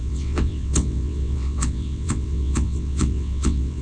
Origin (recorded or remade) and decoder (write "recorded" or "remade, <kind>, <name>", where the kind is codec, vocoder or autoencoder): remade, vocoder, WaveNeXt